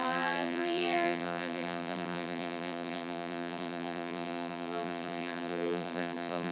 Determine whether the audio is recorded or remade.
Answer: remade